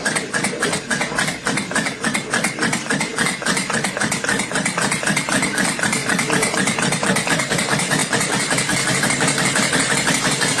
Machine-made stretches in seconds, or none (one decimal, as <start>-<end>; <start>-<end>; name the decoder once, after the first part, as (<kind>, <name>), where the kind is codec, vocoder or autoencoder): 0.0-3.1 (vocoder, BigVGAN v2); 4.4-8.0; 9.0-10.6